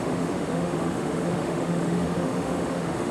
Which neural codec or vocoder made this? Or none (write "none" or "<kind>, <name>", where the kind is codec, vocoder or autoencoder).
autoencoder, DAC-VAE